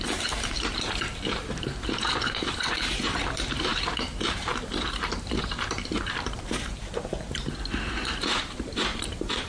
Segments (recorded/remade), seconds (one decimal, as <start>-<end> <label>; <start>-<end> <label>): 0.0-9.5 remade